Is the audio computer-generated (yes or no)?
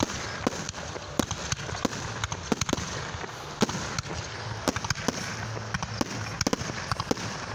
no